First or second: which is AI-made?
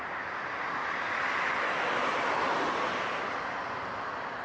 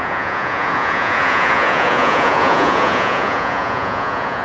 second